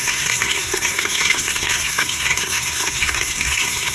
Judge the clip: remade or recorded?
remade